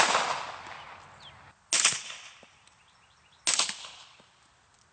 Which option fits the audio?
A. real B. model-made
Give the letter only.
A